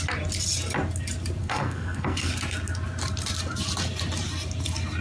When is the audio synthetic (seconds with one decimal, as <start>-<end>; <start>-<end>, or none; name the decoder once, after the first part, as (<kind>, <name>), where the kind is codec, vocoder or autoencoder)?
1.4-2.3 (codec, SNAC)